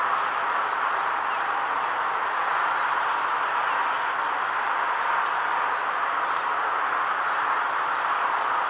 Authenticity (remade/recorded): recorded